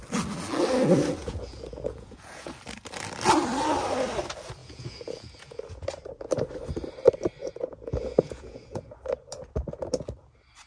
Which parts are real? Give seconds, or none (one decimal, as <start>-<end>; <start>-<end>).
0.0-1.2; 2.5-4.6; 5.6-7.4; 8.9-10.7

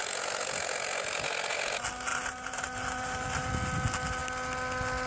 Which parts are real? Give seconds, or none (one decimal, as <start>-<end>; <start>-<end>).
0.0-2.1; 3.5-5.1

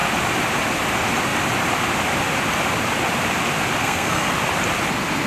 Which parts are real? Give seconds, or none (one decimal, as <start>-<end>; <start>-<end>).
0.0-3.8; 4.3-5.3